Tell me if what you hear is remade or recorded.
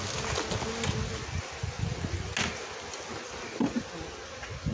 recorded